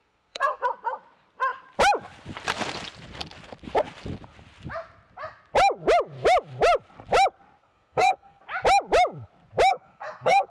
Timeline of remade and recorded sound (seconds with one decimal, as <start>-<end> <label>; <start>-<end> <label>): 0.0-0.6 remade; 0.6-7.6 recorded; 7.6-8.4 remade; 8.4-9.7 recorded; 9.7-10.5 remade